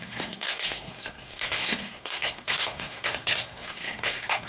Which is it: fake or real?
fake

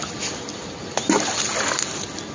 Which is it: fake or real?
real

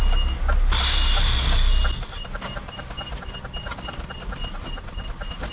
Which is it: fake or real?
real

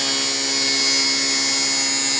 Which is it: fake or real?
real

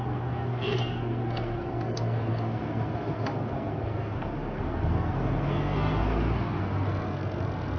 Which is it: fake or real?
fake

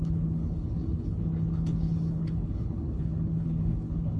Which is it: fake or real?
fake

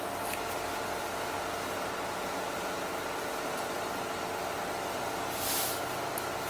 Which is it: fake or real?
real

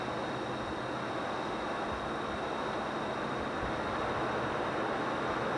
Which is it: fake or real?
real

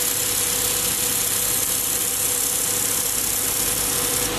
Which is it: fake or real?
real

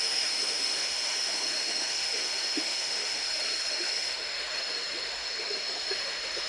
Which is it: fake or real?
fake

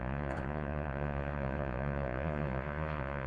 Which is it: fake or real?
fake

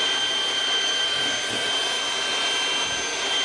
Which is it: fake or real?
real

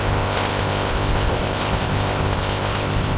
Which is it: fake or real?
fake